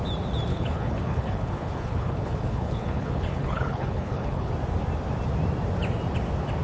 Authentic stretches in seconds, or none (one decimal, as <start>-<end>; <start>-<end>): 0.0-0.5; 4.5-6.6